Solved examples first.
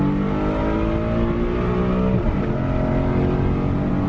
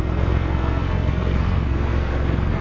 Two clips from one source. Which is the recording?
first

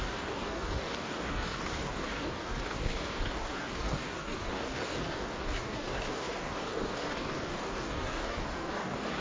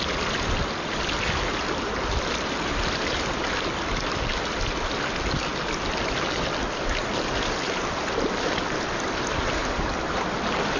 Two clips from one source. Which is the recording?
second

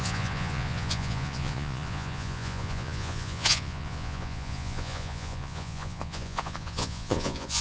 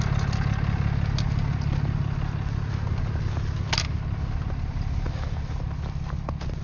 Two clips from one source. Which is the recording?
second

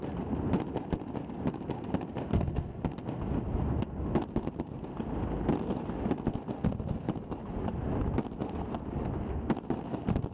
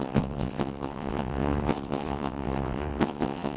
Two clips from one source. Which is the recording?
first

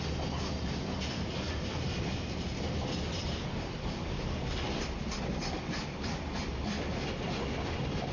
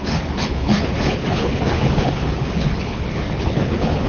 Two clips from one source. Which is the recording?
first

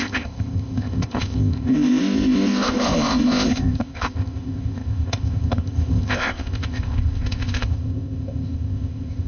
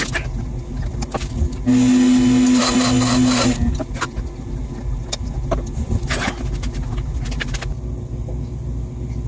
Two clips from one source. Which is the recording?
second